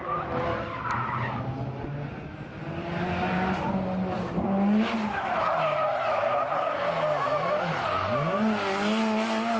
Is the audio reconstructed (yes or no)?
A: no